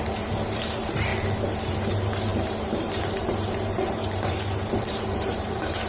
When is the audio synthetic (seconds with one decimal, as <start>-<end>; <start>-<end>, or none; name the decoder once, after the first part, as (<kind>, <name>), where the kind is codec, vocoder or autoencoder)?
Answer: 0.0-1.1 (vocoder, BigVGAN v2); 1.6-5.9